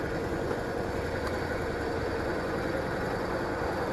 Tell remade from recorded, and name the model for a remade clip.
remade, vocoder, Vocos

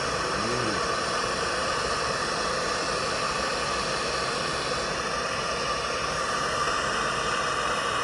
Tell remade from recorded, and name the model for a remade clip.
recorded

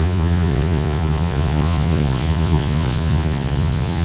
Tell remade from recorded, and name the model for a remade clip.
remade, vocoder, Vocos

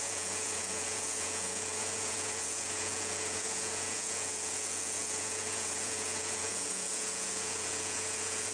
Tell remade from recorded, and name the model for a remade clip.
remade, vocoder, Vocos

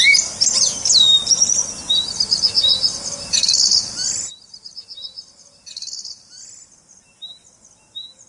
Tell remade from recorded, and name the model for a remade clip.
recorded